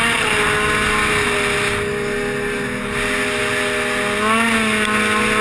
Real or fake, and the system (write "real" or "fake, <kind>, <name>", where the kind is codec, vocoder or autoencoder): real